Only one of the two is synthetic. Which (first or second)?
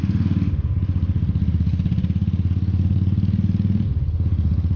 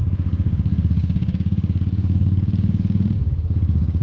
second